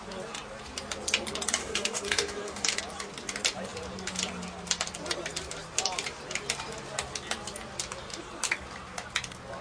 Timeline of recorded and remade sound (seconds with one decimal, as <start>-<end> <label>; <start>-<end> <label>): 0.0-1.6 recorded; 1.6-2.8 remade; 2.8-9.6 recorded